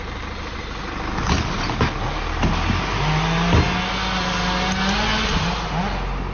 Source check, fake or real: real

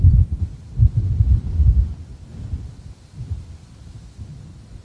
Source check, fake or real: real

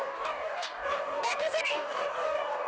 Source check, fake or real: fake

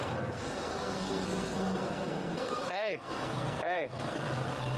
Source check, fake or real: fake